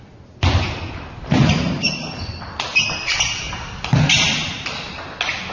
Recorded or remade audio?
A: recorded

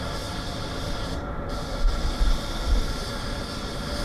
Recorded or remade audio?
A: recorded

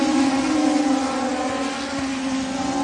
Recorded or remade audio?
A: recorded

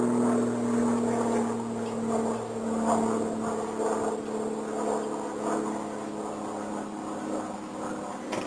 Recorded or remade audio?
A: recorded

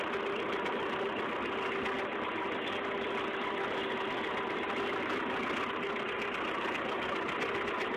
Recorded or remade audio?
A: recorded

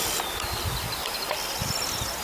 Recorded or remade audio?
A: recorded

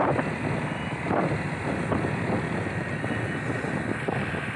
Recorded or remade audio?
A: recorded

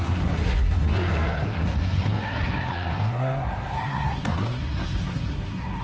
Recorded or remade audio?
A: remade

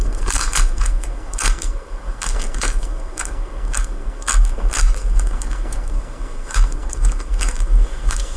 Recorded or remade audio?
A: remade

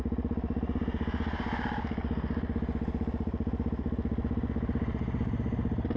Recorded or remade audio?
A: recorded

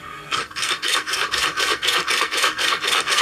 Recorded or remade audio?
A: remade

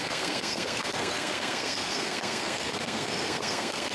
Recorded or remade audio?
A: remade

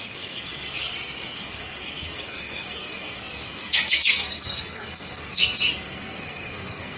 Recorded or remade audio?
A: remade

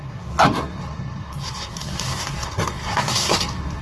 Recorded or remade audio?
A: remade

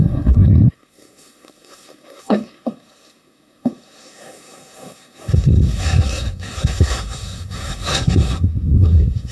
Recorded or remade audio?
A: remade